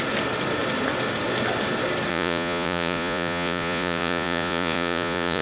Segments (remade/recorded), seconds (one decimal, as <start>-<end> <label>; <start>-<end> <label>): 0.0-2.1 recorded; 2.1-5.4 remade